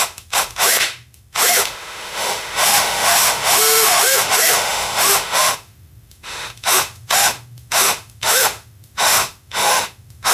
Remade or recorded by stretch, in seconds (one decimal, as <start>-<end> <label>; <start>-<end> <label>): 0.0-10.3 remade